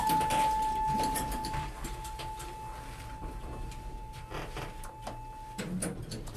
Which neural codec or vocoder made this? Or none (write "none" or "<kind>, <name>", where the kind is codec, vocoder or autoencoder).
none